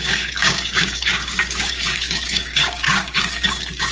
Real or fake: fake